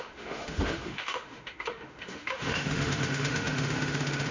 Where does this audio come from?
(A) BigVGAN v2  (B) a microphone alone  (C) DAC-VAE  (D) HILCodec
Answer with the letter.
C